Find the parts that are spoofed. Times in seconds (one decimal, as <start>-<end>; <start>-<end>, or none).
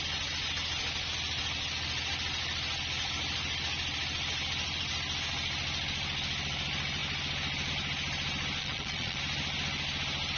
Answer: 8.6-9.2